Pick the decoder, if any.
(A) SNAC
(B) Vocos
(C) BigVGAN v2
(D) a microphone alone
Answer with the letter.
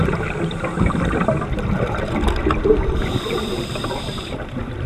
C